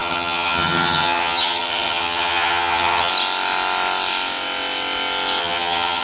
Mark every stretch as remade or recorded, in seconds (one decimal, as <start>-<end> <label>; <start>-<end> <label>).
0.0-3.1 remade; 3.1-5.4 recorded; 5.4-6.0 remade